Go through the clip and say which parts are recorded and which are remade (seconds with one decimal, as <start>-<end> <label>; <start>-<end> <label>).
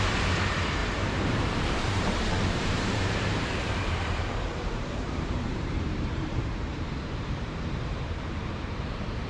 0.0-9.3 remade